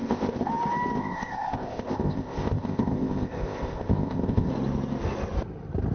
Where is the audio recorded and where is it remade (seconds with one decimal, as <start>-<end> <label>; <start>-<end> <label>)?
0.0-0.5 remade; 0.5-1.0 recorded; 1.0-4.5 remade; 4.5-5.9 recorded